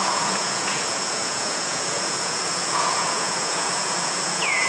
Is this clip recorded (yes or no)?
no